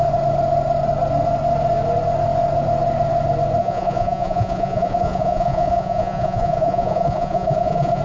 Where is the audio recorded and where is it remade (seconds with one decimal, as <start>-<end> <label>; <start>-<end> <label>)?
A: 0.0-3.6 recorded; 3.6-8.0 remade